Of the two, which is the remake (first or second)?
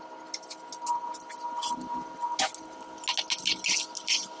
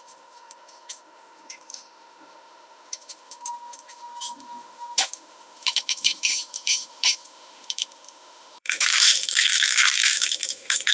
second